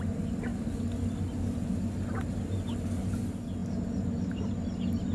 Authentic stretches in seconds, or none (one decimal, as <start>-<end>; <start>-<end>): 0.0-5.1